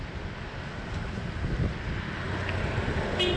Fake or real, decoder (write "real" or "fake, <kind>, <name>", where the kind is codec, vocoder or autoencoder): real